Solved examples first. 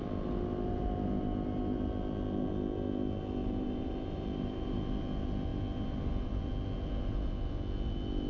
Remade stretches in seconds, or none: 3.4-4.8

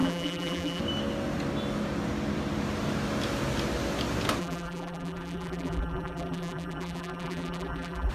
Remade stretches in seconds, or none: 0.0-0.8; 4.4-8.1

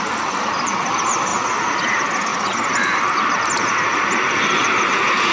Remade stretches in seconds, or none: 0.0-1.3; 1.9-2.3

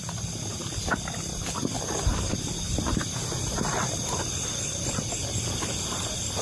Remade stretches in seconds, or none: 0.0-1.3; 5.1-6.4

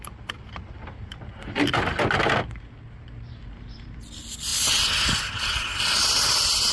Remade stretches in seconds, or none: 0.0-1.9; 3.4-4.5; 5.8-6.7

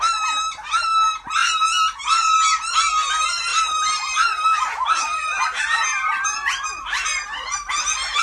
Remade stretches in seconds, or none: 3.5-7.7